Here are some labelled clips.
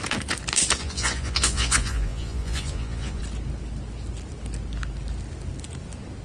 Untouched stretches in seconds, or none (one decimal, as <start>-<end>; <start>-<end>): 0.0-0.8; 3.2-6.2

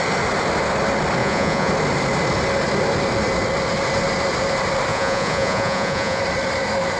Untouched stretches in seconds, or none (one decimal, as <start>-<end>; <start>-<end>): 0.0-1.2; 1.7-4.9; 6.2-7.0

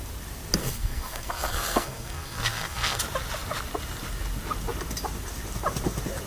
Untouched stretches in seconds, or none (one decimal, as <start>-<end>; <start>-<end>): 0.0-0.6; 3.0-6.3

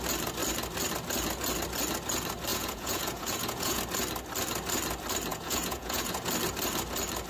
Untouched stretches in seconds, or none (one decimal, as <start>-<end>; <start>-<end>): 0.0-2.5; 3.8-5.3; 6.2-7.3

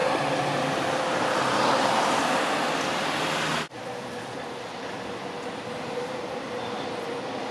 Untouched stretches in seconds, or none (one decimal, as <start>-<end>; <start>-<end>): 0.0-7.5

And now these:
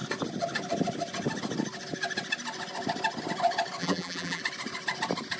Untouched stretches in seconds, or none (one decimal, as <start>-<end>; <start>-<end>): 0.0-3.8; 4.4-5.4

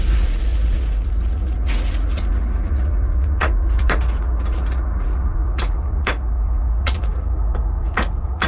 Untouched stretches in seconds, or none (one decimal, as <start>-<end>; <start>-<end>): none

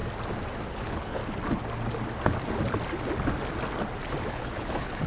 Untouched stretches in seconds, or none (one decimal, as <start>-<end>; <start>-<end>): 0.0-0.7; 1.2-4.3